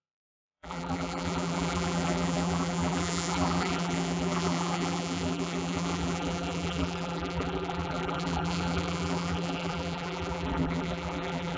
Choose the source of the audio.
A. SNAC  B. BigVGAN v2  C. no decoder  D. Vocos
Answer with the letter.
B